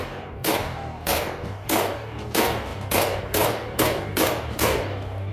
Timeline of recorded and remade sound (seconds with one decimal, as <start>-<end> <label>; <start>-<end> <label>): 0.0-5.3 remade